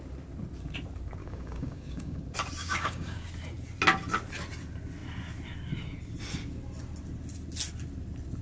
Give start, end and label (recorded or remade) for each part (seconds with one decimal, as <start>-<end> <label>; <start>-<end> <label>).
0.0-1.2 recorded; 1.2-2.2 remade; 2.2-2.6 recorded; 2.6-3.3 remade; 3.3-8.4 recorded